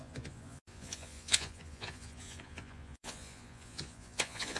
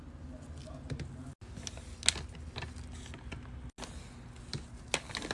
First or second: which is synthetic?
first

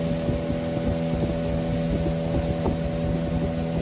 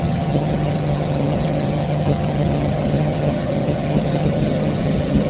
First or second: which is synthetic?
second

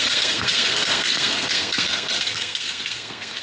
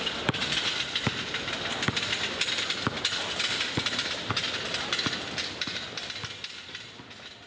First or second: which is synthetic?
first